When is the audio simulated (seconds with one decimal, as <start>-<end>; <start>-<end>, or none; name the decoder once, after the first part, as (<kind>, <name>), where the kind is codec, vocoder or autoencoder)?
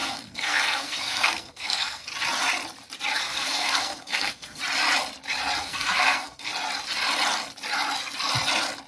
0.0-2.1 (codec, SNAC); 3.1-4.6; 5.6-6.5